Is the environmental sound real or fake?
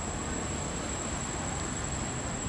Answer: real